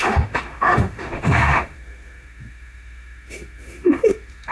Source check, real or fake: fake